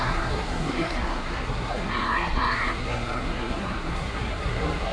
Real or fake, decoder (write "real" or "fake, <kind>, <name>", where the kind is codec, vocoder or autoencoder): fake, codec, SNAC